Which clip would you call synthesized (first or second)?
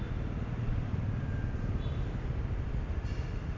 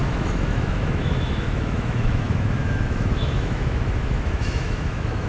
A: second